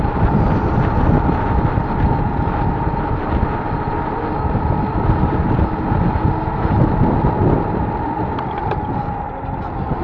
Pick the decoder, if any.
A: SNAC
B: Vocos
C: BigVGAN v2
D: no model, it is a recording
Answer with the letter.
D